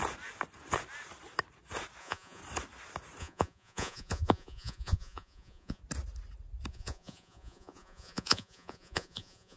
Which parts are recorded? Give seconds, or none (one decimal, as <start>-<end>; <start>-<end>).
0.0-2.0; 2.4-3.2; 5.8-6.7